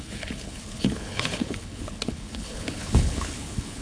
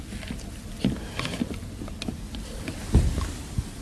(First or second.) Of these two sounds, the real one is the second